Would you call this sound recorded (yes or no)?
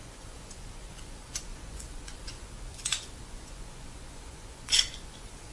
no